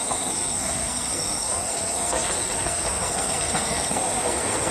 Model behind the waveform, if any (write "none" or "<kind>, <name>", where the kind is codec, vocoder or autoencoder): codec, SNAC